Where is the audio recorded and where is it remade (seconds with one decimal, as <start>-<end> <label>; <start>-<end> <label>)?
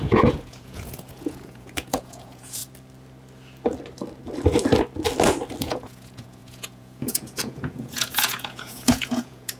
0.0-2.6 remade; 2.6-5.6 recorded; 5.6-9.6 remade